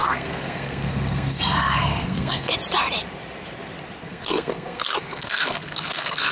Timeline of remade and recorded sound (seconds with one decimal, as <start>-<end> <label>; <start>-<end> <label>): 0.0-2.5 remade; 2.5-4.0 recorded; 4.0-6.3 remade